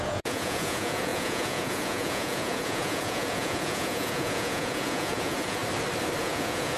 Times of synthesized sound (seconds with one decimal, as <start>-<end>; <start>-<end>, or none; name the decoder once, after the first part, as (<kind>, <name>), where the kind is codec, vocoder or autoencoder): 0.0-5.6 (vocoder, Vocos); 6.2-6.8